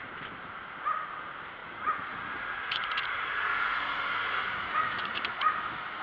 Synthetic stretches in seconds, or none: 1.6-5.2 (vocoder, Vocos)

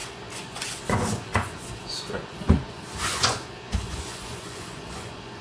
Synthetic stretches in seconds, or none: 0.0-5.4 (vocoder, Vocos)

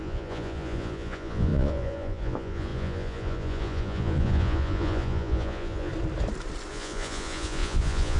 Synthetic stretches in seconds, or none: 0.0-5.9 (vocoder, Vocos); 6.7-8.2

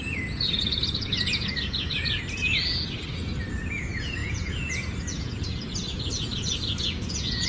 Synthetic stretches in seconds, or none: 0.0-2.6 (vocoder, Vocos); 3.8-7.5

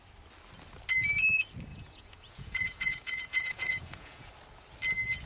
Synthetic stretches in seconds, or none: 1.7-4.3 (vocoder, Vocos)

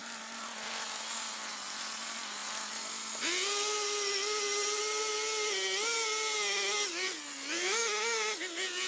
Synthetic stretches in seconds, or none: none

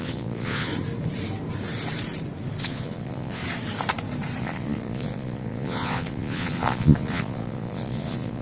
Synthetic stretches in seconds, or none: 0.0-0.7 (vocoder, Vocos); 2.6-3.4; 4.4-8.4

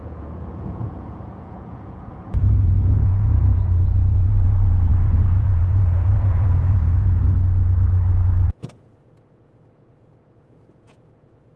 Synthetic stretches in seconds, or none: 0.0-7.2 (vocoder, Vocos); 8.5-11.6